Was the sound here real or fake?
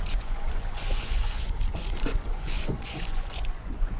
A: fake